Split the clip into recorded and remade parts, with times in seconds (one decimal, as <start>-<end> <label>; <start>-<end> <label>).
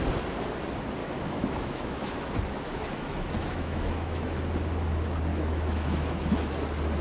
0.0-1.0 recorded; 1.0-4.4 remade; 4.4-5.3 recorded; 5.3-6.5 remade; 6.5-7.0 recorded